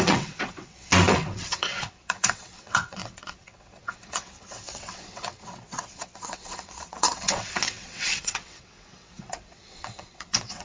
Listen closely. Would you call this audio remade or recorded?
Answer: remade